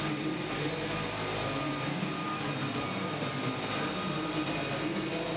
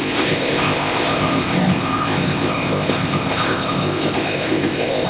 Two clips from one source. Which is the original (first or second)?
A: first